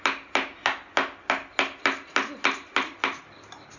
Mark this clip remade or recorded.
recorded